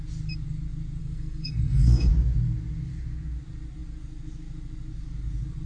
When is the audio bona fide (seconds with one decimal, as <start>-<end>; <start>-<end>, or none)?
0.0-1.0; 2.1-5.7